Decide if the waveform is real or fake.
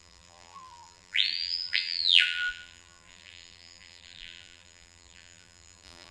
fake